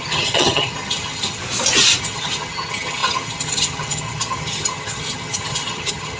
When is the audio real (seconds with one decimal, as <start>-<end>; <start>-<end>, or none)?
1.4-2.0